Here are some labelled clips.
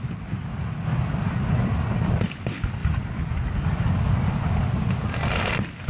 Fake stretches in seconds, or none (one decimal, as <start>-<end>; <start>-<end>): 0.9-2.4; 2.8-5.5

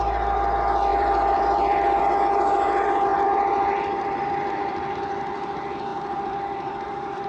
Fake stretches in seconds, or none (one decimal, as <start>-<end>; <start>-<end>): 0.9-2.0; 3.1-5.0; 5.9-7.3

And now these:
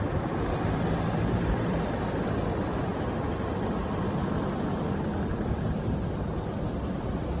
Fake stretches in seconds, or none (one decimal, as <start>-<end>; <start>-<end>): 0.0-2.9; 3.5-4.2; 5.3-7.4

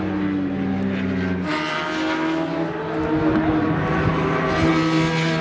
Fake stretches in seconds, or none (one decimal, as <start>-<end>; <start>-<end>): none

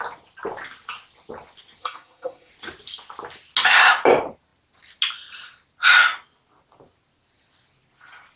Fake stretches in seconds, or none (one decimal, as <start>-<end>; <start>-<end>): 1.8-2.5